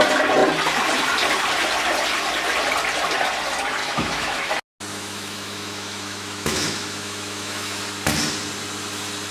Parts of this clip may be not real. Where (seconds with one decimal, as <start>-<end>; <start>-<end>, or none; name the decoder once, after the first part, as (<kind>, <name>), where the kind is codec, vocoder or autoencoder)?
3.8-4.5 (autoencoder, DAC-VAE); 4.9-7.8